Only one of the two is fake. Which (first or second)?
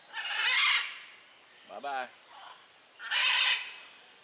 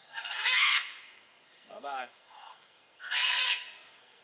second